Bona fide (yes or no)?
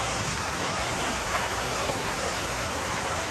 no